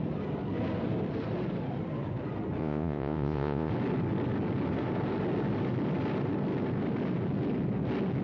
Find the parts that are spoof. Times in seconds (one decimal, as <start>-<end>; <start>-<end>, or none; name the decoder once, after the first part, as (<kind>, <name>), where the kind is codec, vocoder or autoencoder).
2.6-3.7 (vocoder, Vocos)